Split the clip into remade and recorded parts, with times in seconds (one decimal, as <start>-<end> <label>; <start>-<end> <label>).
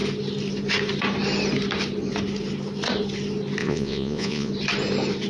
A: 0.0-3.6 recorded; 3.6-4.5 remade; 4.5-5.3 recorded